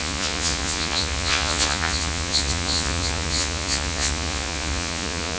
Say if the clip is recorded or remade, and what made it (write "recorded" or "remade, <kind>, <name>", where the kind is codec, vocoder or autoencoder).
remade, vocoder, Vocos